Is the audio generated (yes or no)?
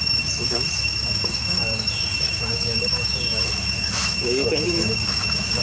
yes